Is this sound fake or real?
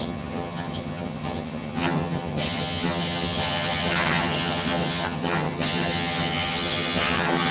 fake